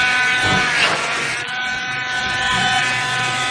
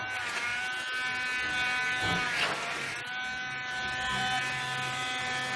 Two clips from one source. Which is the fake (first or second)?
first